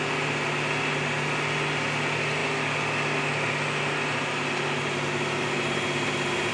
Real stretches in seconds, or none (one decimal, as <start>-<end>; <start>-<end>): 0.0-6.5